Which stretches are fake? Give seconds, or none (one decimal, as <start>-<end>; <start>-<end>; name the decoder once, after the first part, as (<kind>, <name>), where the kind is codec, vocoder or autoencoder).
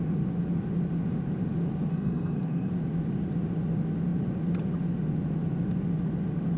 1.9-2.7 (codec, SNAC)